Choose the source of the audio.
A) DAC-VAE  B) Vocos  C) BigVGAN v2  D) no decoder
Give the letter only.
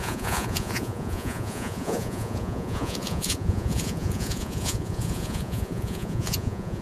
B